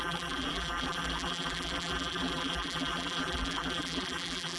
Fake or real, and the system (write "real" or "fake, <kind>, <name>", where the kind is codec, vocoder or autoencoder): fake, vocoder, BigVGAN v2